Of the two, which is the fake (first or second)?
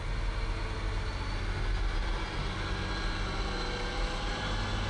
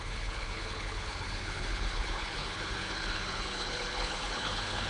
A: second